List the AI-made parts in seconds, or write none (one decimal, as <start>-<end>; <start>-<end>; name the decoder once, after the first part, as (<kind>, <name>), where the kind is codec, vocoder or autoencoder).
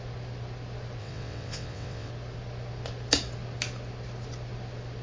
1.0-2.1 (vocoder, WaveNeXt)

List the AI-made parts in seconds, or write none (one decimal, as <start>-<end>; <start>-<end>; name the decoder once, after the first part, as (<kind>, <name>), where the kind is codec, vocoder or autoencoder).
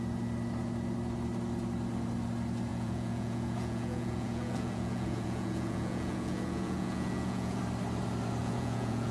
2.7-7.6 (vocoder, Vocos); 8.4-9.1